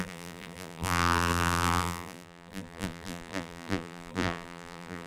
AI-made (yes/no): yes